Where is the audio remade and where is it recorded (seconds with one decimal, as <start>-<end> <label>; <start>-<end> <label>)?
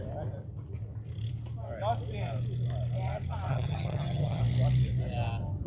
0.0-3.5 recorded; 3.5-4.4 remade; 4.4-5.7 recorded